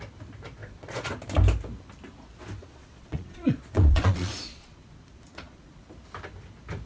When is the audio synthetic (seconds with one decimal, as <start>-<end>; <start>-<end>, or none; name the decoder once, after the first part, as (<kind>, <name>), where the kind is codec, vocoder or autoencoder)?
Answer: 0.6-1.1 (vocoder, Vocos); 2.6-5.8